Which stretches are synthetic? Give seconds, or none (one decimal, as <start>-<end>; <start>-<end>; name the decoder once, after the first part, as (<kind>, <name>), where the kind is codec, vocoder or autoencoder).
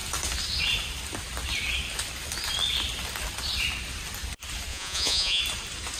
4.7-5.4 (vocoder, Vocos)